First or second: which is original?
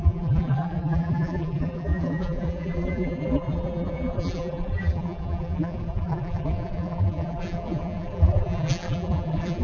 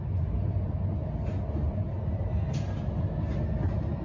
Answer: second